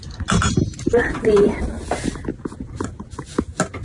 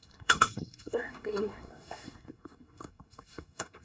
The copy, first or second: second